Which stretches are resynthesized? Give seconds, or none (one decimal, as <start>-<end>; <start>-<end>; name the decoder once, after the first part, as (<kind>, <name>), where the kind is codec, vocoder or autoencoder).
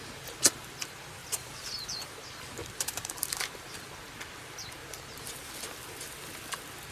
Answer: 1.2-1.7 (vocoder, BigVGAN v2); 2.6-4.0; 4.8-5.5